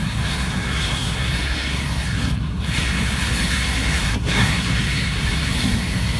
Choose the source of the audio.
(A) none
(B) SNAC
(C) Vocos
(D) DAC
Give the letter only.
B